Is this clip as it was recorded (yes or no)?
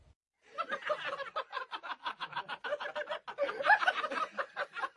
yes